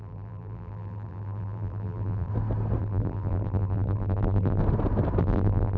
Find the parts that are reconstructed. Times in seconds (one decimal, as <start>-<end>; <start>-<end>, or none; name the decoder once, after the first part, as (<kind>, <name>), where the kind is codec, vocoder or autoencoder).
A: 0.0-2.3 (vocoder, BigVGAN v2); 2.8-4.6; 5.2-5.8